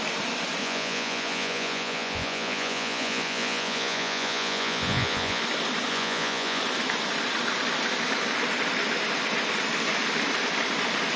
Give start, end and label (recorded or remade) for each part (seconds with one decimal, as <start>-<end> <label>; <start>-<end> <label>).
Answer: 0.0-0.6 recorded; 0.6-5.4 remade; 5.4-5.9 recorded; 5.9-6.6 remade; 6.6-11.2 recorded